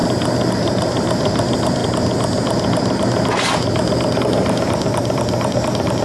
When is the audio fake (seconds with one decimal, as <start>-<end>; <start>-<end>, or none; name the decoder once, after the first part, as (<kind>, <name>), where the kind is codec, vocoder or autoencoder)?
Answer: 0.5-1.8 (vocoder, BigVGAN v2); 4.2-6.0